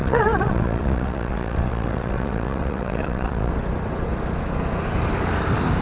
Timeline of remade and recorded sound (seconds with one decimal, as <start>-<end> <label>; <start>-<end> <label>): 0.0-3.5 remade; 3.5-5.8 recorded